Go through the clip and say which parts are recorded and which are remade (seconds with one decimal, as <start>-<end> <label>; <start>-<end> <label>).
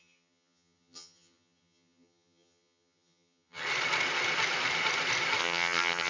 0.0-3.6 remade; 3.6-5.4 recorded; 5.4-6.1 remade